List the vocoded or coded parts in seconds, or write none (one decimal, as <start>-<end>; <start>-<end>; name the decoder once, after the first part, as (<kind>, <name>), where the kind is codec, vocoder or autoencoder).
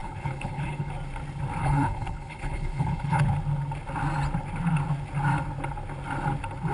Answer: 0.0-0.9 (codec, HILCodec); 1.6-3.2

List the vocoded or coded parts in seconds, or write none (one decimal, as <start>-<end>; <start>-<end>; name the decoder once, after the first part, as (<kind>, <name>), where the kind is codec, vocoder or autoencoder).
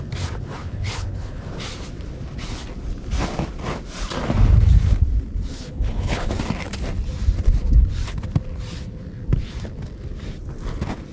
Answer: 0.6-1.4 (codec, HILCodec); 5.5-6.3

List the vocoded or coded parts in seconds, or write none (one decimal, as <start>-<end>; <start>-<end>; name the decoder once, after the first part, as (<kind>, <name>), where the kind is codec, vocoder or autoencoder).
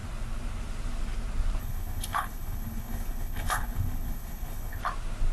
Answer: 1.6-4.8 (codec, HILCodec)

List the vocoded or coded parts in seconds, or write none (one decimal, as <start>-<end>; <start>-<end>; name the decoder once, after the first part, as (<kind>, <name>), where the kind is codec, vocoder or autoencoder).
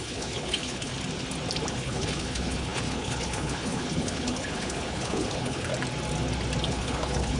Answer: 0.0-0.9 (codec, HILCodec); 1.7-5.7; 6.7-7.4